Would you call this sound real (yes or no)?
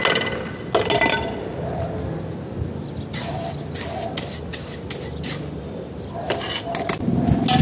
yes